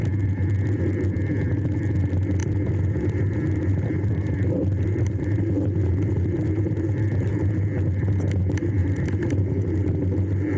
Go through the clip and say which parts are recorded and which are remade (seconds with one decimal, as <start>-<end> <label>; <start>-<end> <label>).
0.0-2.4 recorded; 2.4-7.5 remade; 7.5-8.8 recorded; 8.8-9.4 remade; 9.4-10.6 recorded